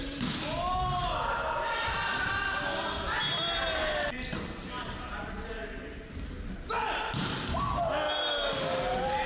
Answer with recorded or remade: recorded